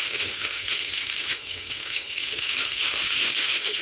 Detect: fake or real fake